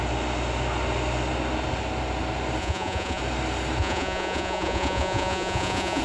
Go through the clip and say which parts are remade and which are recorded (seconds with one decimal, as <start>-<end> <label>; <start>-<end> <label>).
0.0-2.6 recorded; 2.6-3.2 remade; 3.2-3.8 recorded; 3.8-6.0 remade